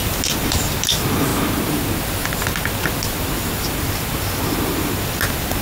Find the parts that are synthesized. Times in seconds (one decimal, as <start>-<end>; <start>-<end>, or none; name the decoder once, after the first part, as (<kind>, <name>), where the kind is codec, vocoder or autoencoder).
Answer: none